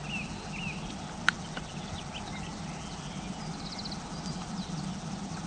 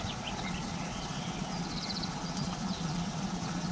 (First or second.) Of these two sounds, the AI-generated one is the second